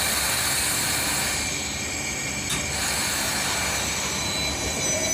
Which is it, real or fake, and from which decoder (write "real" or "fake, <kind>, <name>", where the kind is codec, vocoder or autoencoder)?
real